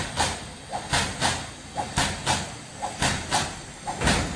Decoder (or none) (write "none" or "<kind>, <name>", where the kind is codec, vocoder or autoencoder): none